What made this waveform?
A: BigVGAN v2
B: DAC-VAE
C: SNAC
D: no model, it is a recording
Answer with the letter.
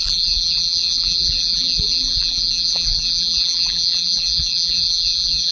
A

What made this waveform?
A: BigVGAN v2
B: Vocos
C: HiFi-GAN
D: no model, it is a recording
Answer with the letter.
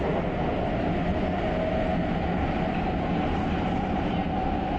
D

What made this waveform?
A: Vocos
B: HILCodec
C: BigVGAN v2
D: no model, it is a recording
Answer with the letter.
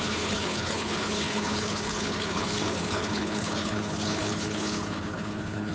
B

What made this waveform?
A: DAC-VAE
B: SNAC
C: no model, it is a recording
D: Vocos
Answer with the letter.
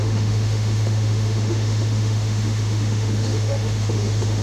A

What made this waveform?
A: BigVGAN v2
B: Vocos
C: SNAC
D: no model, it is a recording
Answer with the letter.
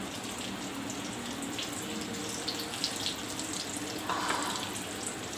D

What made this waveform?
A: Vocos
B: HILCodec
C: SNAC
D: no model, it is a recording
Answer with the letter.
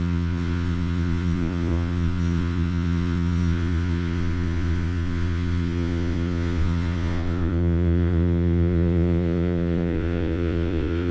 A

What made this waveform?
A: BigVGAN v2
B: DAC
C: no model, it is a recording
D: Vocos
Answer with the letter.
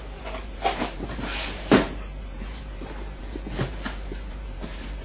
A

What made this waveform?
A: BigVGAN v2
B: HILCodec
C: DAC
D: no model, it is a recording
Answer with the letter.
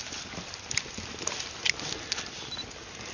D